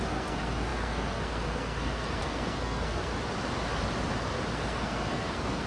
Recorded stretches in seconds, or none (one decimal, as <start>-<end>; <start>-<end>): 3.1-4.5